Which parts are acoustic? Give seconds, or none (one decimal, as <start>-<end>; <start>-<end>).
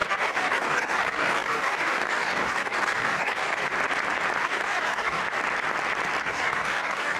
3.6-4.4; 5.2-6.2